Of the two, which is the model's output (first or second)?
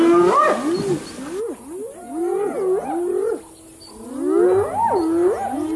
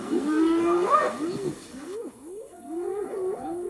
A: second